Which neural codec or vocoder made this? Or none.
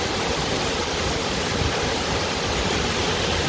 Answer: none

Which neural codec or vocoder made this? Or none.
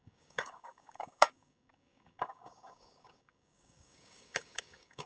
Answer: codec, DAC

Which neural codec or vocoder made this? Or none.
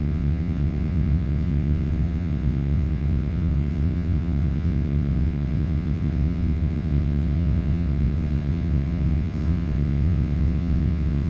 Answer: vocoder, WaveNeXt